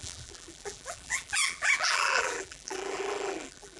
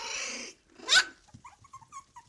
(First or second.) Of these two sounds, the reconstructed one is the first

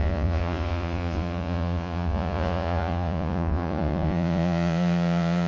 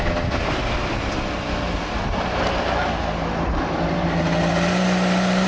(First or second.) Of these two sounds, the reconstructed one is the first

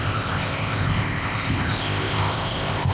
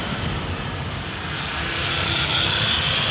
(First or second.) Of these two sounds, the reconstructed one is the first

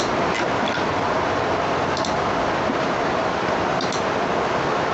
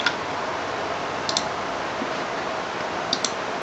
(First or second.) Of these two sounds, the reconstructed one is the first